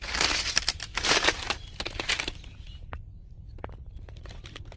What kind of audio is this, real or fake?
real